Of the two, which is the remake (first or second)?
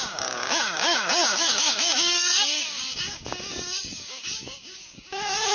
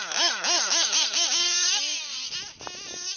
first